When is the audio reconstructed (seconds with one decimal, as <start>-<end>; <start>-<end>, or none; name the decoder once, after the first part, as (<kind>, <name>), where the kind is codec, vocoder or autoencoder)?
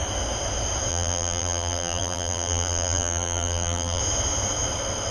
0.9-4.0 (vocoder, BigVGAN v2)